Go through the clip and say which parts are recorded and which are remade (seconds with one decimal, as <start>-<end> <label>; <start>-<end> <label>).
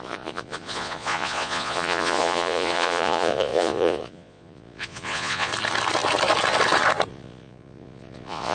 0.0-5.5 remade; 5.5-7.1 recorded; 7.1-8.5 remade